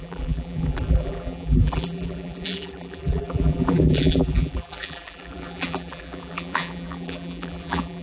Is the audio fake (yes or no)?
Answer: yes